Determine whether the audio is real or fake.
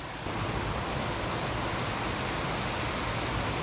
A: real